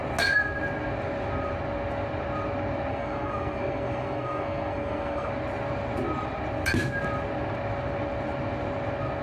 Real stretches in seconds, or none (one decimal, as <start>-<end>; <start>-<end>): 0.0-2.9; 5.3-9.2